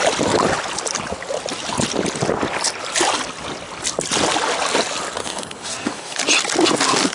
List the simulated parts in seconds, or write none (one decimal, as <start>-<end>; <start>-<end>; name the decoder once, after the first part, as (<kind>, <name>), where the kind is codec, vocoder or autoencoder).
5.2-6.2 (codec, SNAC)

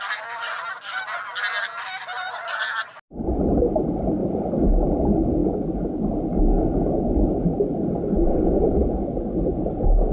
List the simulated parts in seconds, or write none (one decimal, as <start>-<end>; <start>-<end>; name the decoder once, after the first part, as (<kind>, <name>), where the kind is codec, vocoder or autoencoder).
none